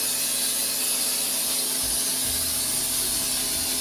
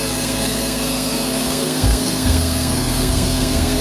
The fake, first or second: second